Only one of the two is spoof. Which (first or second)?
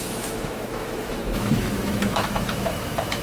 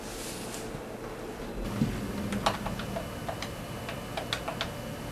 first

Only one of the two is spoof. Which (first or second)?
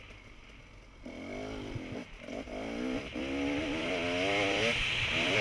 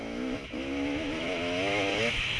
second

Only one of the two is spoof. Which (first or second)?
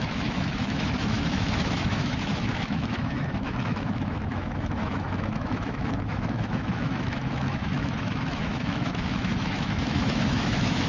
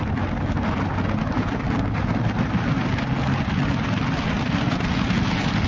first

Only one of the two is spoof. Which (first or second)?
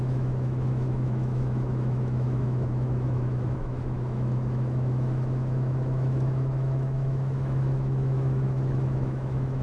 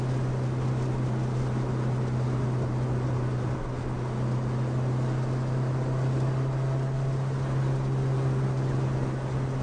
first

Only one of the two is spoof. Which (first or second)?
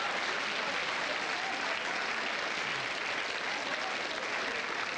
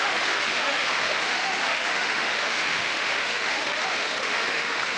second